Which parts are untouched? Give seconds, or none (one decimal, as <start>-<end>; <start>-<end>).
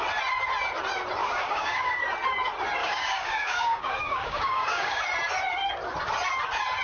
0.0-1.2; 2.0-2.8; 5.0-6.8